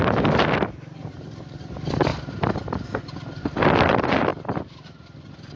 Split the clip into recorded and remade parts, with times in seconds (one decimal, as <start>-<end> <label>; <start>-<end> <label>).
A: 0.0-2.1 remade; 2.1-3.4 recorded; 3.4-4.3 remade; 4.3-5.6 recorded